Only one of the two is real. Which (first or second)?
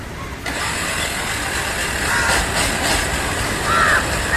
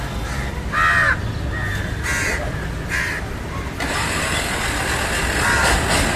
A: second